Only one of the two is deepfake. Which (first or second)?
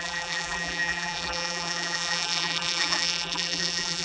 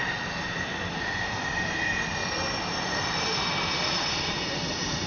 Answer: first